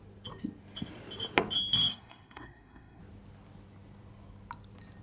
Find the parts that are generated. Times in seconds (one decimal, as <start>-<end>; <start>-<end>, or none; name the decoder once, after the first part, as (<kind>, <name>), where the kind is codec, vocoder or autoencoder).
1.9-3.0 (codec, SNAC)